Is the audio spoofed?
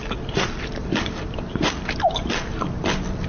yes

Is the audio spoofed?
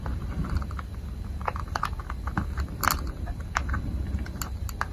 no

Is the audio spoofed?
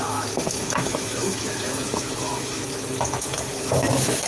yes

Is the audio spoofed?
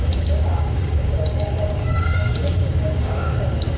yes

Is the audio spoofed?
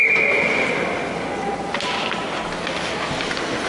no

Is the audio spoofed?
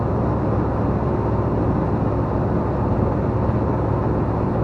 no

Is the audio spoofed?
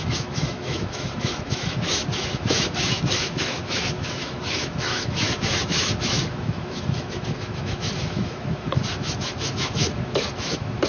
yes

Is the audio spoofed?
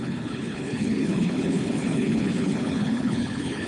yes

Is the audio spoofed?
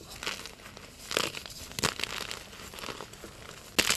no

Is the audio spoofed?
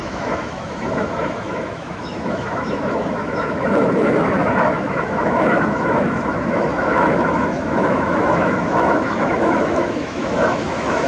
yes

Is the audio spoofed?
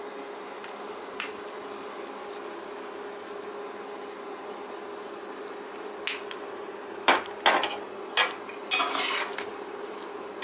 no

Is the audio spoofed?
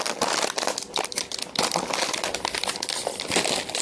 no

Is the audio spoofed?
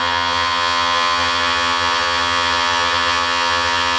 yes